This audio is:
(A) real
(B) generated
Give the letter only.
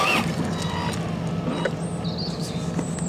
A